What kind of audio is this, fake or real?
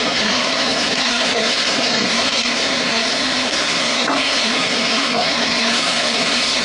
fake